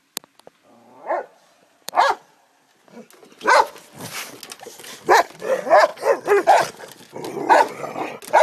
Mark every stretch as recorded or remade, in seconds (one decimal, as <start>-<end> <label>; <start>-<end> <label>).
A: 0.0-1.3 recorded; 1.3-2.3 remade; 2.3-3.2 recorded; 3.2-3.8 remade; 3.8-8.4 recorded